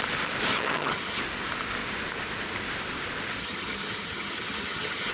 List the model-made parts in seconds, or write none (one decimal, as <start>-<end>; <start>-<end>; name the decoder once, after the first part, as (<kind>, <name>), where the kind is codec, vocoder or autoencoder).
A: 0.5-1.2 (vocoder, HiFi-GAN); 3.4-5.1